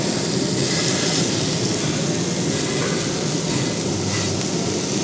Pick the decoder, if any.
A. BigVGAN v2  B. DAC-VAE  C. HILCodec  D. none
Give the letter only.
D